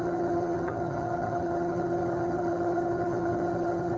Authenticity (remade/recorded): remade